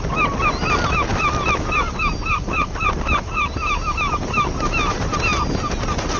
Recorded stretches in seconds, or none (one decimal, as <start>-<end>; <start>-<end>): 0.0-6.2